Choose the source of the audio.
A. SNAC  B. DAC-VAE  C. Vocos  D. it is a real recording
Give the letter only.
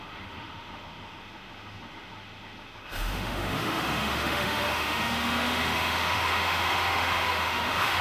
B